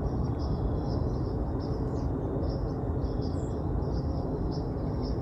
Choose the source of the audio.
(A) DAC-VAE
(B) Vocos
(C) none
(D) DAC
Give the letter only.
C